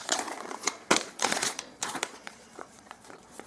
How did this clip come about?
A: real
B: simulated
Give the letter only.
B